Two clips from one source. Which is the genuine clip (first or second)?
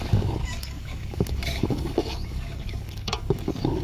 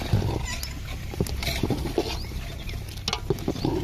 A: second